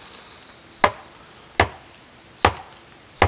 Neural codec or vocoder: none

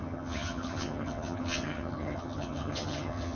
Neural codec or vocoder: vocoder, HiFi-GAN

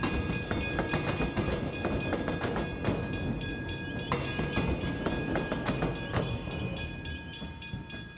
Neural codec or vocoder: none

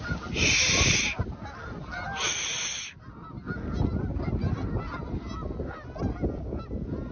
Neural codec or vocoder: none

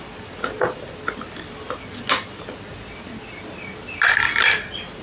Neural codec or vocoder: none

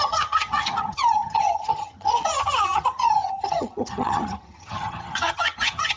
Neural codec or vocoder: vocoder, HiFi-GAN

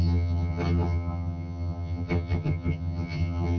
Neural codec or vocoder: vocoder, HiFi-GAN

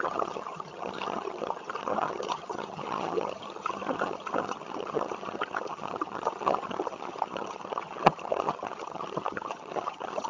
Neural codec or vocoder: vocoder, HiFi-GAN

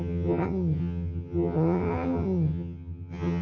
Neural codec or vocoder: vocoder, HiFi-GAN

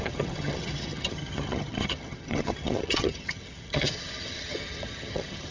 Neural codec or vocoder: vocoder, HiFi-GAN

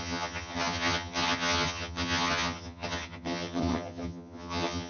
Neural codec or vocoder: vocoder, HiFi-GAN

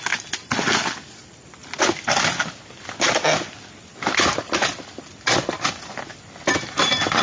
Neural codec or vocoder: none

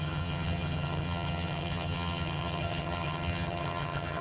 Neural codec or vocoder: vocoder, HiFi-GAN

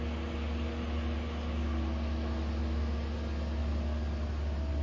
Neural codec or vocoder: none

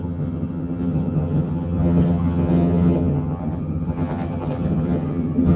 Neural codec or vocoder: vocoder, HiFi-GAN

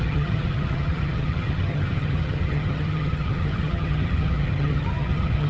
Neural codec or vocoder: vocoder, HiFi-GAN